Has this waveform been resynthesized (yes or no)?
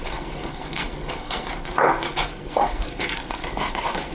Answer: yes